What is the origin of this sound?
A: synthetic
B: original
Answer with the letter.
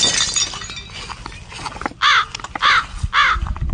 B